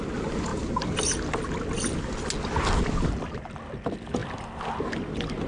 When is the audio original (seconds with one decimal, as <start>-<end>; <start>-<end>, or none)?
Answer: 0.0-5.5